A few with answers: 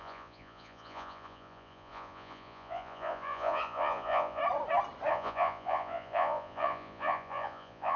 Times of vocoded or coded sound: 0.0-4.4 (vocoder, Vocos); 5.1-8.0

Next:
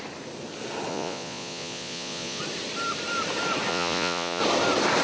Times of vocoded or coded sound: 0.9-2.4 (vocoder, Vocos); 3.7-4.4